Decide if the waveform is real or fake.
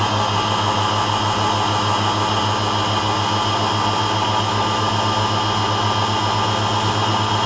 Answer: real